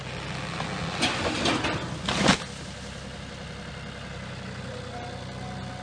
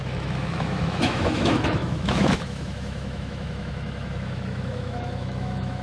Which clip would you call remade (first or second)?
second